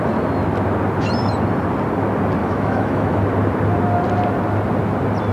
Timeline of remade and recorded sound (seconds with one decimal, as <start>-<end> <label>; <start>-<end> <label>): 0.0-2.4 recorded; 2.4-3.2 remade; 3.2-5.3 recorded